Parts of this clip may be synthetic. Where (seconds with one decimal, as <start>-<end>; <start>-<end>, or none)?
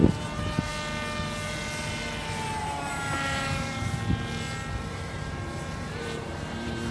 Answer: 0.0-0.7; 2.6-4.0; 4.8-6.9